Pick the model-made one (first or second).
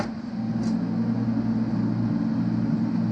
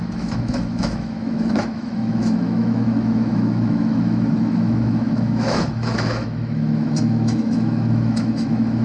second